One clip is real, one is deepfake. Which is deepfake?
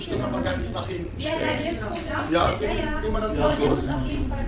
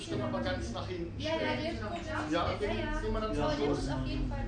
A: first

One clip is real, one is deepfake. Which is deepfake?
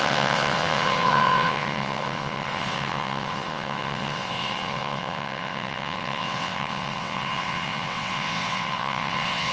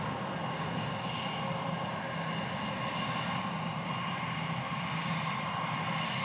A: first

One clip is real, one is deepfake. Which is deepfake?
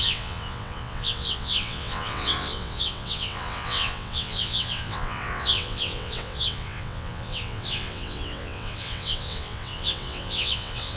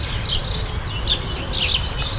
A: first